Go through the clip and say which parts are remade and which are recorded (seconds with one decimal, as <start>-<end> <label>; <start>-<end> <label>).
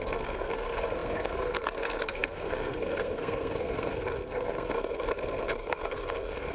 0.0-6.5 remade